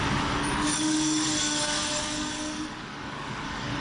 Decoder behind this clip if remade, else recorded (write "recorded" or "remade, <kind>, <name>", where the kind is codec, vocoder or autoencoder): remade, codec, DAC